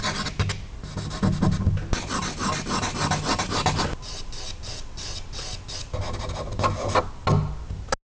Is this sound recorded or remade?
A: recorded